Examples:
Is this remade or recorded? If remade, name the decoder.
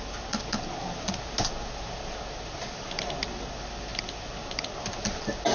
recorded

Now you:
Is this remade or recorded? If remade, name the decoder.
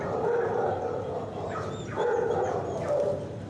recorded